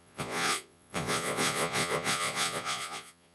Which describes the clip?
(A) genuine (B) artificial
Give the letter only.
B